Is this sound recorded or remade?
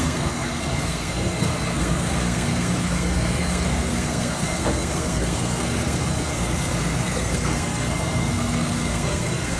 remade